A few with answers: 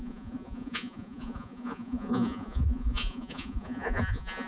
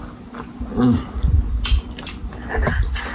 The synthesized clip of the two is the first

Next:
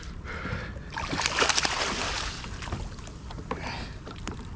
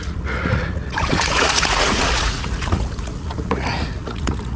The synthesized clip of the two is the second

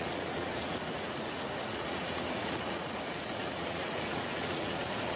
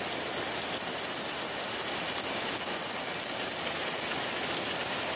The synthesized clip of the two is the first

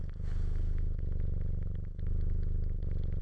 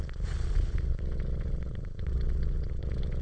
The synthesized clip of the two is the second